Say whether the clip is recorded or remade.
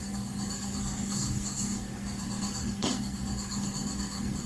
remade